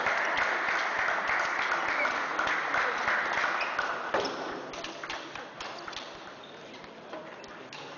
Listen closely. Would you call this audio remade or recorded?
recorded